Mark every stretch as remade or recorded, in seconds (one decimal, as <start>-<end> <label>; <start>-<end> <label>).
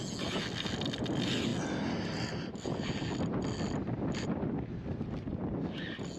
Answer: 0.0-6.2 recorded